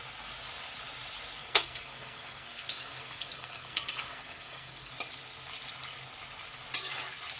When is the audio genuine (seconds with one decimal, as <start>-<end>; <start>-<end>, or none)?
0.0-1.4; 4.9-7.4